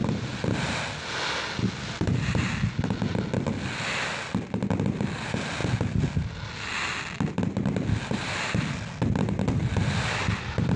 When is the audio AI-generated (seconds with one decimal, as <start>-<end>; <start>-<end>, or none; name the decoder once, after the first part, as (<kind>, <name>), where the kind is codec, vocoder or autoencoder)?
none